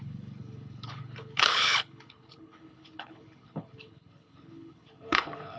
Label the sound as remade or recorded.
remade